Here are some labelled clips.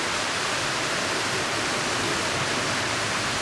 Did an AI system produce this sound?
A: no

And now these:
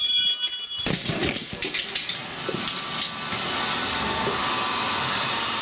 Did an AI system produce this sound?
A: no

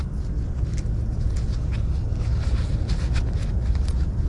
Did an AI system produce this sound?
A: no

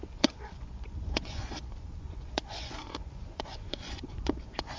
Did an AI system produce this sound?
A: yes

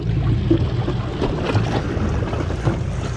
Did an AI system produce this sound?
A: no